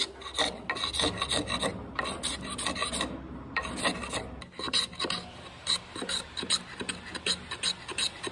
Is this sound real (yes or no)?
yes